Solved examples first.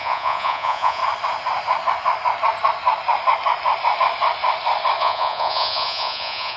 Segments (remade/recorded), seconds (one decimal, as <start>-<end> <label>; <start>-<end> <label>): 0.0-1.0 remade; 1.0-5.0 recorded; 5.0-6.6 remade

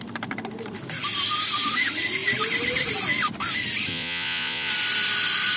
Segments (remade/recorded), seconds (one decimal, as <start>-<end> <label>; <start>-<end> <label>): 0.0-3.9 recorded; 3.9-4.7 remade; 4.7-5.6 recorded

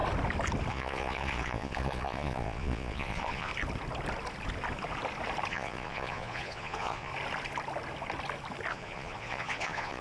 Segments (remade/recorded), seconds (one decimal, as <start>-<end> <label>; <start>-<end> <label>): 0.0-0.7 recorded; 0.7-3.5 remade; 3.5-5.5 recorded; 5.5-7.1 remade; 7.1-8.7 recorded; 8.7-10.0 remade